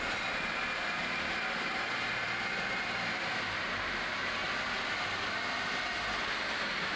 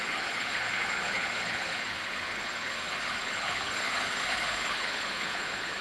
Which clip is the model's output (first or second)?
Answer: second